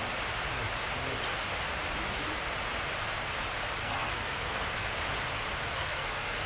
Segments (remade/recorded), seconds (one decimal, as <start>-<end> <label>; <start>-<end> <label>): 0.0-3.8 recorded; 3.8-4.9 remade; 4.9-5.7 recorded; 5.7-6.5 remade